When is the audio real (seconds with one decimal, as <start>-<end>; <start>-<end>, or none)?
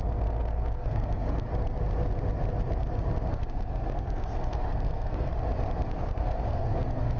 1.5-3.3; 5.3-5.8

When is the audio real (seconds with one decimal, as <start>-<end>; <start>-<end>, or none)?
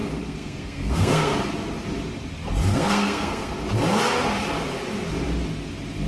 1.4-2.7; 3.5-6.1